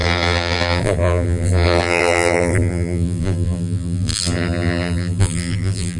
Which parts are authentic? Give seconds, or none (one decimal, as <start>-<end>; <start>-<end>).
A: none